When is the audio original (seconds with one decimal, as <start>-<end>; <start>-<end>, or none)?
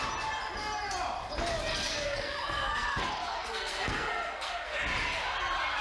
0.0-1.7; 4.8-5.8